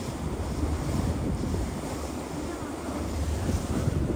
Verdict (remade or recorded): recorded